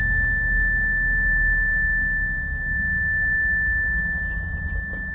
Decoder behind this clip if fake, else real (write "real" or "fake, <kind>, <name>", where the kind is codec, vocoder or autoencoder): real